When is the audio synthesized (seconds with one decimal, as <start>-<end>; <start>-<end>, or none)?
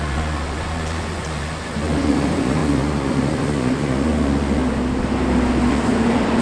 0.0-4.6; 5.7-6.4